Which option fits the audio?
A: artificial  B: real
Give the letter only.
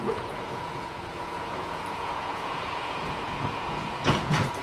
A